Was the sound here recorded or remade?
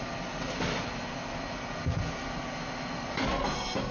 recorded